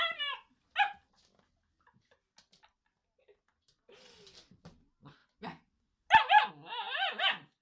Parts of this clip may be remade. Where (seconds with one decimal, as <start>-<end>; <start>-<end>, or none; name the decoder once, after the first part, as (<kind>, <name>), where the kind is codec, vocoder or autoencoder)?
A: none